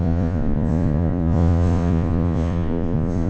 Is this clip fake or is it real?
fake